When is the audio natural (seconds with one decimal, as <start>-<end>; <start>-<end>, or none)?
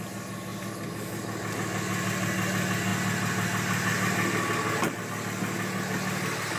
0.0-6.6